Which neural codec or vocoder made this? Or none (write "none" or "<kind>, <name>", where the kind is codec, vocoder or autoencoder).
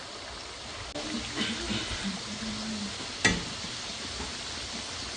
none